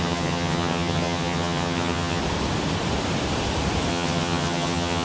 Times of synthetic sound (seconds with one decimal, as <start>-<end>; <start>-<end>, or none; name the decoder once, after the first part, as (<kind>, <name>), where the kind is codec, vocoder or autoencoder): 0.0-2.2 (vocoder, HiFi-GAN); 3.9-5.0